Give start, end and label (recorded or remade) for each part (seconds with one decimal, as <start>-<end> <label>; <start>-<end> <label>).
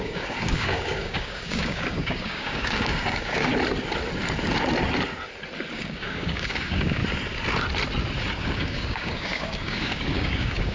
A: 0.0-3.5 remade; 3.5-5.7 recorded; 5.7-7.0 remade; 7.0-8.4 recorded; 8.4-10.7 remade